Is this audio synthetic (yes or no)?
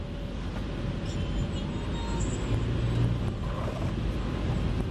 no